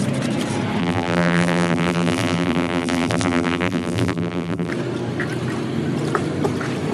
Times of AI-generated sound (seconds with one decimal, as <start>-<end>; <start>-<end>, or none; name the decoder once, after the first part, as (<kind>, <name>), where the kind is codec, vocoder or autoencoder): 0.8-4.7 (vocoder, BigVGAN v2)

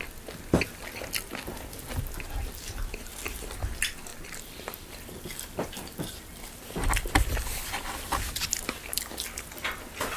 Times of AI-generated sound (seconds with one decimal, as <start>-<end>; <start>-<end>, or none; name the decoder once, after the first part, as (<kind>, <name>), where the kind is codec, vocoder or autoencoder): 4.1-7.7 (vocoder, BigVGAN v2)

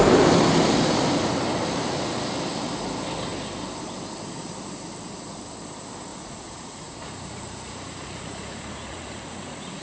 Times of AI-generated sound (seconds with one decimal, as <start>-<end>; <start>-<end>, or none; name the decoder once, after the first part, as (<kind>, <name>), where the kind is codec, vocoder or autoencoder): 6.1-9.8 (vocoder, Vocos)